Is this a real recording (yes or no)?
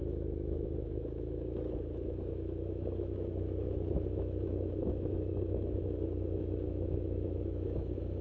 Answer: no